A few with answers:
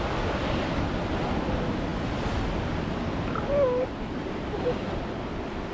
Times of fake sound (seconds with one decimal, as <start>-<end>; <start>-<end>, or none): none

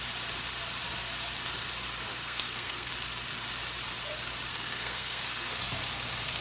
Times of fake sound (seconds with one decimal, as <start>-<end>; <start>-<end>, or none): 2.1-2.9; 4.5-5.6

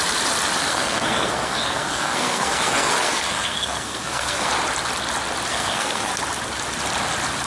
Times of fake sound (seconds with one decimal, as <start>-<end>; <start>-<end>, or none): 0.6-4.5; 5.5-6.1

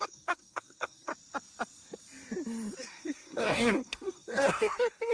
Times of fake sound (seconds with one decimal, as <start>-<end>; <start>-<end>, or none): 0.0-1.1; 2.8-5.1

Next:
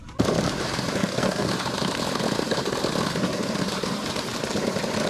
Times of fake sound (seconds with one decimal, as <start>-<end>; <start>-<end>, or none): 1.0-1.5

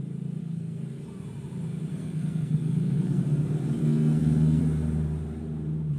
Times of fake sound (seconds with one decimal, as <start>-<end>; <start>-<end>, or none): 0.4-1.0; 1.9-3.2; 3.8-4.6

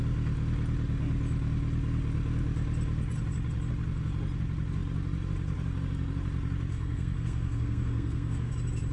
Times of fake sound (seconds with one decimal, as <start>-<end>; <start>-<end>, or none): 6.7-8.5

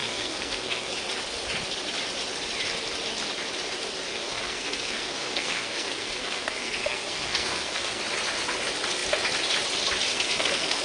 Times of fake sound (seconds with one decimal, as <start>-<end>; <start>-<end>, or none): 0.0-0.9; 4.1-8.0; 10.1-10.8